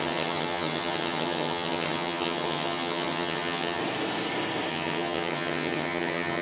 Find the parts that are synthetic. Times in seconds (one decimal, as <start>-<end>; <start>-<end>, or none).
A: 0.0-3.8; 4.7-6.4